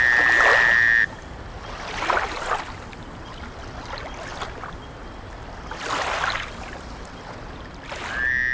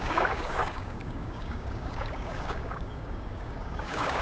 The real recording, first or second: first